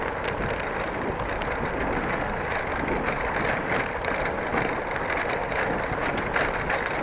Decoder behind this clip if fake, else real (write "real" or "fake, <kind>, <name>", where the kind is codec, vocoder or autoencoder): real